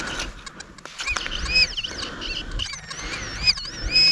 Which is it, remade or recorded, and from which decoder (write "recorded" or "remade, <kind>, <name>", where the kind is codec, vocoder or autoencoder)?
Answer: recorded